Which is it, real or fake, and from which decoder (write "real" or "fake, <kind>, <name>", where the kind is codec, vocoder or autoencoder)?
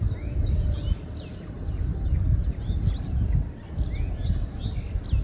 real